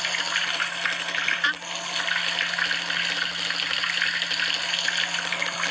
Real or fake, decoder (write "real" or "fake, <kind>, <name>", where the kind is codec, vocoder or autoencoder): real